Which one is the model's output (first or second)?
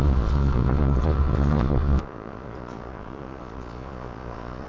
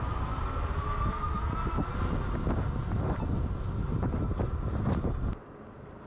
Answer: first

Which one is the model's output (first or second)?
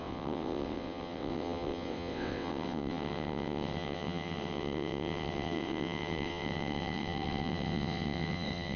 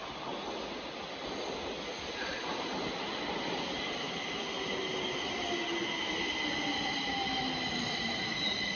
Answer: first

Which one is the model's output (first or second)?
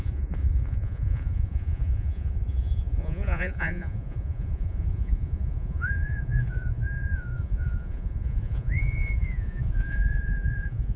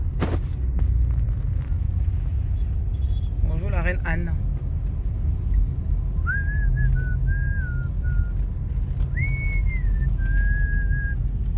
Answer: first